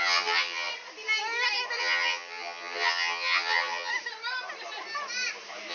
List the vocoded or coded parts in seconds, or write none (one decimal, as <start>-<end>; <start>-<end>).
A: 0.0-0.7; 1.8-3.9